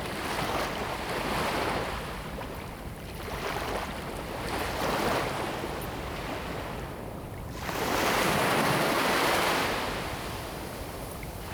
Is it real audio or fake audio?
fake